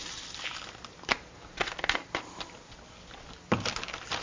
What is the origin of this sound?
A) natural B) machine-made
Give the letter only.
A